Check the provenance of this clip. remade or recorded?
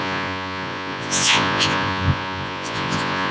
remade